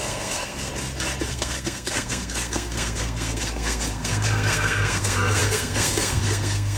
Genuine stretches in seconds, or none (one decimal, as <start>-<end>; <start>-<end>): 0.7-1.3